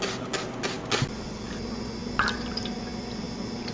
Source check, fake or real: real